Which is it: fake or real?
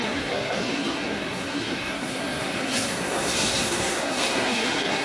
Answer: fake